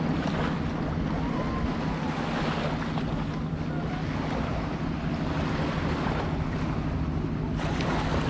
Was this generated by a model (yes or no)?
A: no